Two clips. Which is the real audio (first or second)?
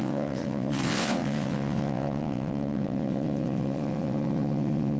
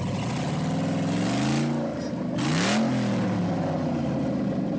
second